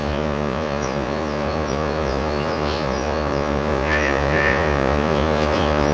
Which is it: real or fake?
fake